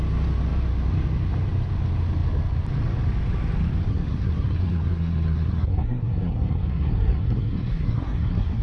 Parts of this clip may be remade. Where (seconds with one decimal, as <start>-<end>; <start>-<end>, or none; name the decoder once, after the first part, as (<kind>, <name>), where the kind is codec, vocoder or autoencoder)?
3.9-8.6 (codec, SNAC)